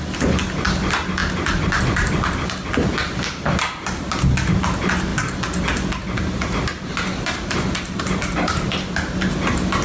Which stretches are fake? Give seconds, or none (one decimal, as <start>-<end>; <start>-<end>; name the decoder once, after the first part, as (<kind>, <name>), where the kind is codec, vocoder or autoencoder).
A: none